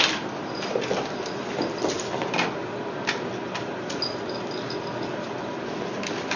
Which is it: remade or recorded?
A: recorded